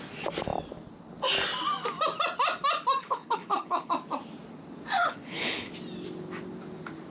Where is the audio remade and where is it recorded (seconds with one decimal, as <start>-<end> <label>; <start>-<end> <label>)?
0.0-3.0 recorded; 3.0-3.9 remade; 3.9-5.0 recorded; 5.0-5.7 remade; 5.7-7.1 recorded